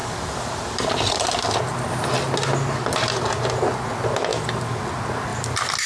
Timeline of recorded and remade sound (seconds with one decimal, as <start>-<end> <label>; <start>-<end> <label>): 0.0-4.3 recorded; 4.3-4.8 remade; 4.8-5.3 recorded; 5.3-5.9 remade